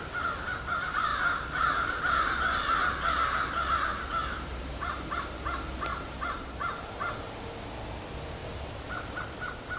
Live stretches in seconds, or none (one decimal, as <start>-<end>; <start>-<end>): 0.0-1.1; 2.4-3.9; 5.3-5.9; 7.1-8.4; 9.2-9.8